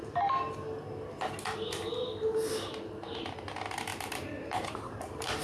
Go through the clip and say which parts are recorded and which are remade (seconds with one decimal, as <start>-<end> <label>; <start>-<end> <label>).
0.0-3.9 recorded; 3.9-5.4 remade